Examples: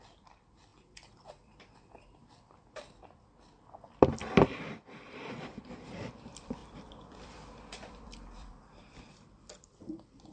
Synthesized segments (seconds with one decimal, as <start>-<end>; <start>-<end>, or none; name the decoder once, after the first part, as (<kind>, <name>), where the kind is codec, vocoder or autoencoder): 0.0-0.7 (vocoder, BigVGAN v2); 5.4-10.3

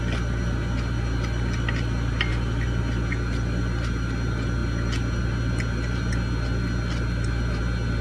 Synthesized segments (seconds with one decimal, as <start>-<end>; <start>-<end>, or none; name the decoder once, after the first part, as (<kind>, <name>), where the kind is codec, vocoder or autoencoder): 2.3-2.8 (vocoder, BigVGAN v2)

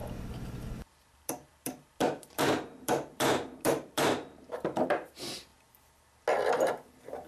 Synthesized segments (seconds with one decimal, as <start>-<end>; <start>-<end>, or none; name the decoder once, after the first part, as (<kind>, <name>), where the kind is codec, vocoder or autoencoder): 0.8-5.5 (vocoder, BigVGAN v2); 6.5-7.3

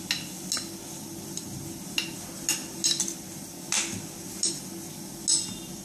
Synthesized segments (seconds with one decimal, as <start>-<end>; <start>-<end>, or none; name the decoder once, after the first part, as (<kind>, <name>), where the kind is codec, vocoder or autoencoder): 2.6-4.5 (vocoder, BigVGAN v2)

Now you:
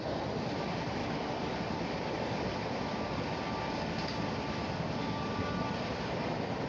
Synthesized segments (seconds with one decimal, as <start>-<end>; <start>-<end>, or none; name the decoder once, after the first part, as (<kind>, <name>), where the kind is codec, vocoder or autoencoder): none

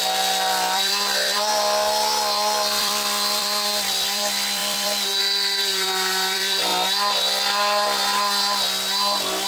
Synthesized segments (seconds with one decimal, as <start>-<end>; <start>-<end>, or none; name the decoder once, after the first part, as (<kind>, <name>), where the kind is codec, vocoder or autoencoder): 0.0-1.5 (vocoder, BigVGAN v2); 2.8-6.7